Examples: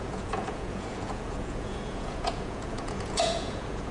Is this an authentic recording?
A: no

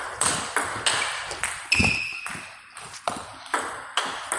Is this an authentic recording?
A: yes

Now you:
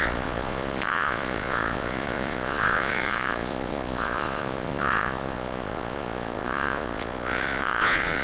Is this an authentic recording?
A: no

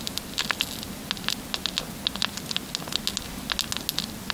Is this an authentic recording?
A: yes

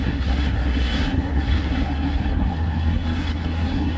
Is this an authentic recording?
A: no